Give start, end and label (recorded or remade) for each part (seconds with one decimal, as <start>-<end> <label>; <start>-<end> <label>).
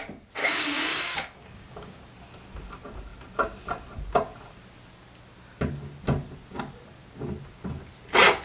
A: 0.0-0.4 recorded; 0.4-2.0 remade; 2.0-8.4 recorded